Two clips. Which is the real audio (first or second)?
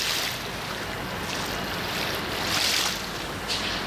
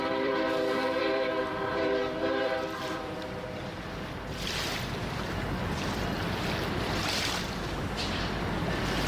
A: first